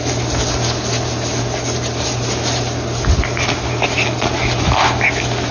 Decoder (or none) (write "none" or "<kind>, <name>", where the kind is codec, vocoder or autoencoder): none